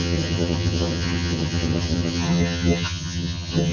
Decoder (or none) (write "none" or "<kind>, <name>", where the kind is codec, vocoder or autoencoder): vocoder, HiFi-GAN